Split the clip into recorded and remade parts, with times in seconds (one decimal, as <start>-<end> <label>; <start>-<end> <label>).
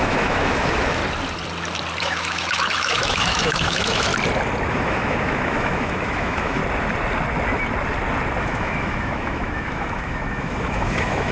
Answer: 0.0-1.0 remade; 1.0-2.0 recorded; 2.0-4.1 remade; 4.1-4.7 recorded; 4.7-6.6 remade; 6.6-8.4 recorded; 8.4-11.3 remade